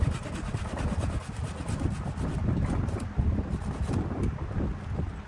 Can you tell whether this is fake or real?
real